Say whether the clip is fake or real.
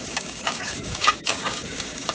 fake